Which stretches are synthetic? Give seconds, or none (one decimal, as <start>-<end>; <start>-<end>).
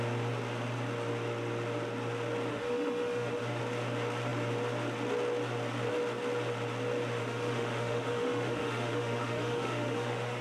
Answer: 2.5-3.6; 7.2-10.4